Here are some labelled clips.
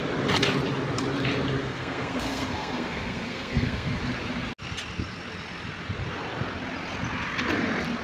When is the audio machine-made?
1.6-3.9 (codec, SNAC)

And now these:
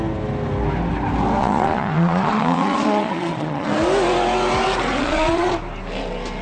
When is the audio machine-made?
1.4-3.7 (vocoder, Vocos); 5.0-5.5